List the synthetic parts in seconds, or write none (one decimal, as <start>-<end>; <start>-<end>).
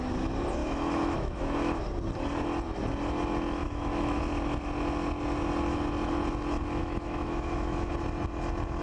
0.6-1.8; 3.6-4.2; 6.8-7.9